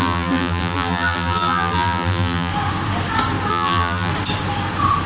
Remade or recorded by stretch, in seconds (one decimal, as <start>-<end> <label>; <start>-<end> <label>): 0.0-2.5 remade; 2.5-3.5 recorded; 3.5-4.1 remade; 4.1-5.1 recorded